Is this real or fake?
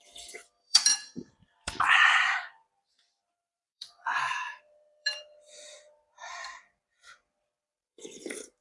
fake